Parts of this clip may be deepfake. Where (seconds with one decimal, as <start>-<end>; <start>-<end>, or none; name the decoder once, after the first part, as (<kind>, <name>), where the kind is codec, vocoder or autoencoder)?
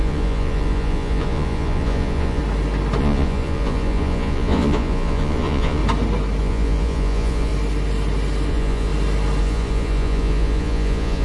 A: 0.0-2.4 (vocoder, Vocos); 3.0-5.8; 6.4-7.5; 8.5-8.9; 9.4-11.2